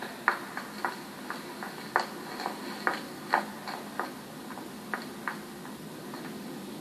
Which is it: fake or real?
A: real